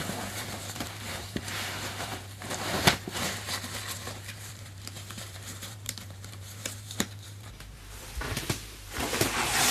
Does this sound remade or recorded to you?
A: remade